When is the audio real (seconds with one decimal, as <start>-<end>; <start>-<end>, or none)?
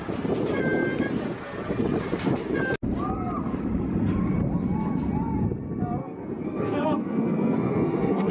0.0-6.0